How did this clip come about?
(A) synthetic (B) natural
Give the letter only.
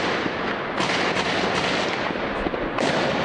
B